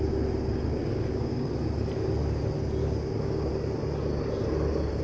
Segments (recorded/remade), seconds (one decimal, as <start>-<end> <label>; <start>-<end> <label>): 0.0-0.8 recorded; 0.8-1.5 remade; 1.5-2.8 recorded; 2.8-3.5 remade; 3.5-5.0 recorded